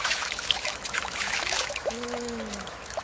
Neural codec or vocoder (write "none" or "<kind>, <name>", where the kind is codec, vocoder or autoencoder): autoencoder, DAC-VAE